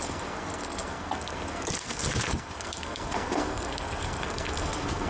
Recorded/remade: remade